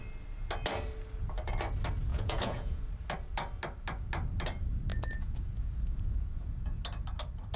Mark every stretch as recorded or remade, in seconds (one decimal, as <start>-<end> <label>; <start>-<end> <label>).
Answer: 0.0-2.1 recorded; 2.1-2.8 remade; 2.8-4.9 recorded; 4.9-6.8 remade; 6.8-7.6 recorded

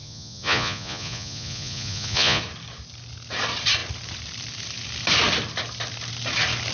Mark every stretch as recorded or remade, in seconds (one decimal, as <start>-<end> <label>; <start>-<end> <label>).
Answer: 0.0-2.4 remade; 2.4-6.7 recorded

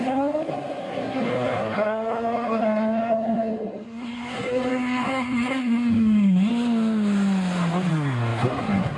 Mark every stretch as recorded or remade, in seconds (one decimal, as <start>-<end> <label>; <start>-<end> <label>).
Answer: 0.0-6.5 remade; 6.5-7.9 recorded; 7.9-9.0 remade

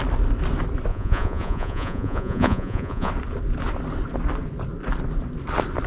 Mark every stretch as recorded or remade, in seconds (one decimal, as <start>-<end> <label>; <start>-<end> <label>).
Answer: 0.0-0.9 recorded; 0.9-3.1 remade; 3.1-5.9 recorded

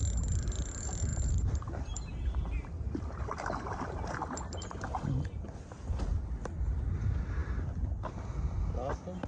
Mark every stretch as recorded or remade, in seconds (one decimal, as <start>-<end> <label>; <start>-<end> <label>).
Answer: 0.0-1.1 recorded; 1.1-6.0 remade; 6.0-9.3 recorded